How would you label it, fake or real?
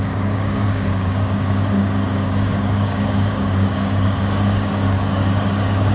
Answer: fake